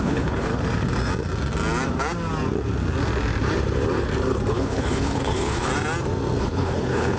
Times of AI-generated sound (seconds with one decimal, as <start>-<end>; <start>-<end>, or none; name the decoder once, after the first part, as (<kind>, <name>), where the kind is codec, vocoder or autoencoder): 0.0-0.5 (codec, HILCodec); 4.5-5.7; 6.4-7.2